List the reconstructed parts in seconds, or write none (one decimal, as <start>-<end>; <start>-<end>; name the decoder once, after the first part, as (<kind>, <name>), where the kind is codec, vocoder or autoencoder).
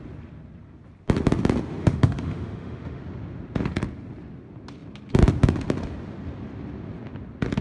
1.8-3.0 (autoencoder, DAC-VAE)